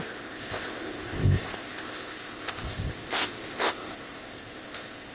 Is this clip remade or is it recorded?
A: remade